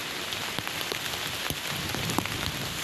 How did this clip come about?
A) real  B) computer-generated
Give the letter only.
A